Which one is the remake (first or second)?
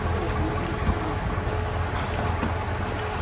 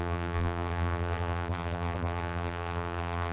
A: second